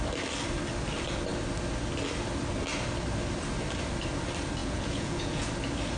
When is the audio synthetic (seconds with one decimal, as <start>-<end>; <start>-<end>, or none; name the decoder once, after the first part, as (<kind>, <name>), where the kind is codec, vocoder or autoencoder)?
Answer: 4.6-5.5 (vocoder, Vocos)